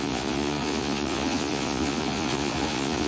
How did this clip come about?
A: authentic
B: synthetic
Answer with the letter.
B